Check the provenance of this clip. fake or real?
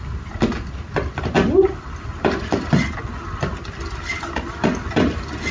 real